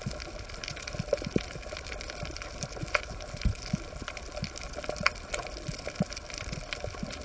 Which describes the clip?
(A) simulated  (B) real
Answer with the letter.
A